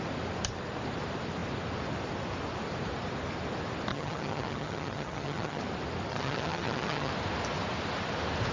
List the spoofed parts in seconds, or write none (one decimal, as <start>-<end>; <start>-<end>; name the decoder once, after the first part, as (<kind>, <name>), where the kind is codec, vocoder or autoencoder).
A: 3.9-5.6 (vocoder, HiFi-GAN); 6.1-7.1